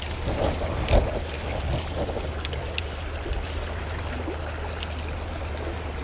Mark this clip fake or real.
real